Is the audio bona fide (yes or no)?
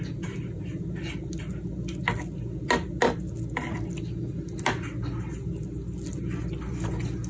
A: yes